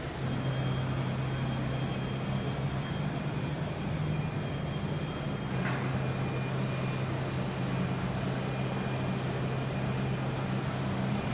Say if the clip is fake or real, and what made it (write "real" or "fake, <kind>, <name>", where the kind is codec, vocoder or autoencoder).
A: real